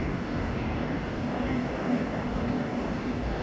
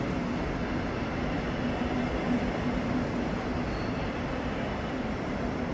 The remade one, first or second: first